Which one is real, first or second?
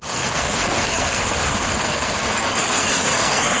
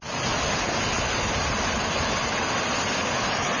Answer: second